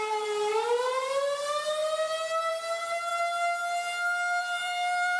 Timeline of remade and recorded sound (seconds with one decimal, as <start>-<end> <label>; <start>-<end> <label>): 0.0-1.8 remade; 1.8-2.5 recorded; 2.5-3.1 remade; 3.1-4.4 recorded; 4.4-5.2 remade